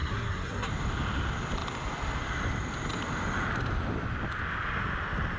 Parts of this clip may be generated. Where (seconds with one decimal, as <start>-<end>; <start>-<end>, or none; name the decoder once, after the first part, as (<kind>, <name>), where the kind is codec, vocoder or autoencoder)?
0.0-0.7 (codec, SNAC)